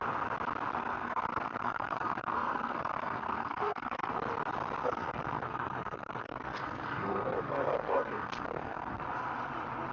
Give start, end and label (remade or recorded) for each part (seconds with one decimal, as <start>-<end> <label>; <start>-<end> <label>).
0.0-0.8 recorded; 0.8-4.1 remade; 4.1-4.8 recorded; 4.8-9.0 remade; 9.0-9.9 recorded